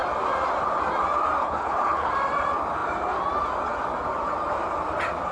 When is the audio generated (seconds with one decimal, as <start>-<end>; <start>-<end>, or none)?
1.4-2.1